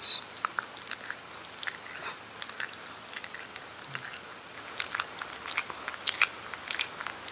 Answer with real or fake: real